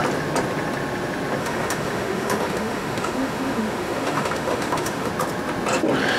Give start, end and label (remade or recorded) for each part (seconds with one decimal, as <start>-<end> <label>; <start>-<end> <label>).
0.0-1.4 recorded; 1.4-5.1 remade; 5.1-6.2 recorded